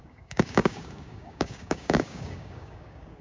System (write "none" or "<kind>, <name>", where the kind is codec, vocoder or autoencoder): codec, DAC